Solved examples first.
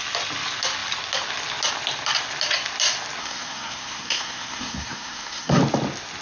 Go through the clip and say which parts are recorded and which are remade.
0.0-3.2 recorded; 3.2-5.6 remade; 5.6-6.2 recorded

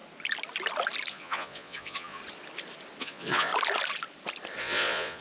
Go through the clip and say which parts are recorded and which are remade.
0.0-1.1 recorded; 1.1-2.2 remade; 2.2-3.0 recorded; 3.0-3.5 remade; 3.5-4.6 recorded; 4.6-5.2 remade

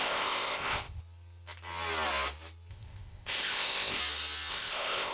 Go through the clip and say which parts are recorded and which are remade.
0.0-1.0 remade; 1.0-2.7 recorded; 2.7-4.0 remade; 4.0-4.5 recorded; 4.5-5.1 remade

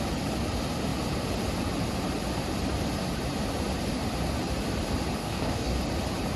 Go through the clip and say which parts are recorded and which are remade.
0.0-5.2 recorded; 5.2-5.8 remade; 5.8-6.4 recorded

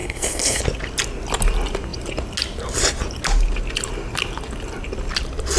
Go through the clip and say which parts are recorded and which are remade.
0.0-0.6 remade; 0.6-5.6 recorded

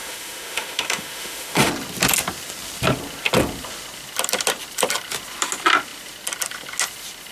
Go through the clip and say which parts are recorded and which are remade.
0.0-1.7 remade; 1.7-7.3 recorded

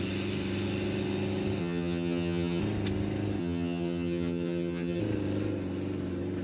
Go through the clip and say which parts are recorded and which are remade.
0.0-1.6 recorded; 1.6-2.6 remade; 2.6-3.4 recorded; 3.4-5.0 remade; 5.0-6.4 recorded